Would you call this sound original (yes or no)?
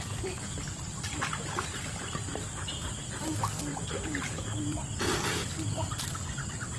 no